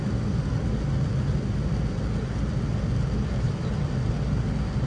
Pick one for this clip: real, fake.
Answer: real